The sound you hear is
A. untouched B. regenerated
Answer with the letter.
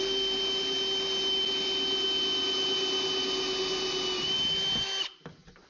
A